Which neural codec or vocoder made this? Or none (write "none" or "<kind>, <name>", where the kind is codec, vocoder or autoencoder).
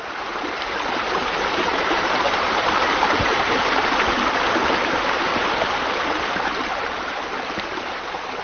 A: vocoder, BigVGAN v2